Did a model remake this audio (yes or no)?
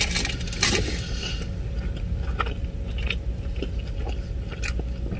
no